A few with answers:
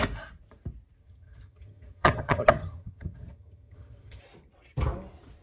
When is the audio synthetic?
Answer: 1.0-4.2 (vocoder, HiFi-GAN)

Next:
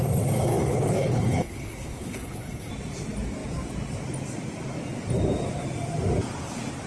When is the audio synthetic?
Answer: 0.7-2.7 (codec, HILCodec)

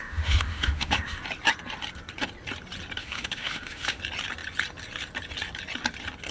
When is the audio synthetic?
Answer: 0.0-1.2 (autoencoder, DAC-VAE); 3.0-4.0

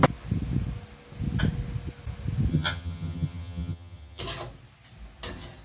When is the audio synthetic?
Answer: 2.5-4.2 (vocoder, HiFi-GAN)

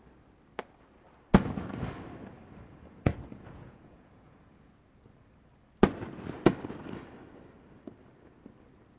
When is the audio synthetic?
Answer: 2.7-4.7 (vocoder, Vocos)

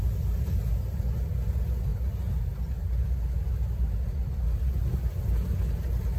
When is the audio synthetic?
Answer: none